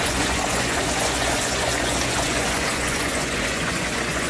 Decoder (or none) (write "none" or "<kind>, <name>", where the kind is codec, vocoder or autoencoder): vocoder, Vocos